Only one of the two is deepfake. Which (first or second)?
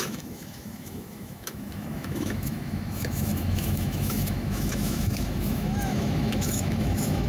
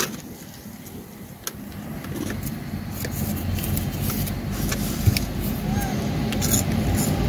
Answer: first